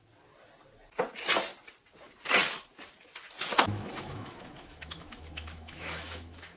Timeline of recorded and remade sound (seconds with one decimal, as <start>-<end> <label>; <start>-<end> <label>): 0.0-3.6 recorded; 3.6-6.6 remade